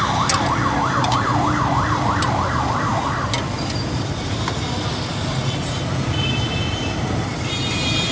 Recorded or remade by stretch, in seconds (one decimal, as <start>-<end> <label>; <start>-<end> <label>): 0.0-8.1 recorded